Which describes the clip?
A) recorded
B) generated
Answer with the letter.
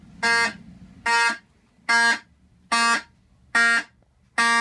A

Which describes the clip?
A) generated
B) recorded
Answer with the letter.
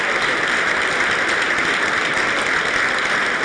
B